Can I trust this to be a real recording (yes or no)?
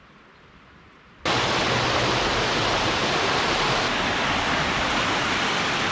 yes